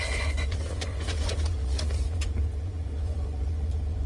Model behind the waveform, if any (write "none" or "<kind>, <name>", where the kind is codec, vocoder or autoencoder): vocoder, Vocos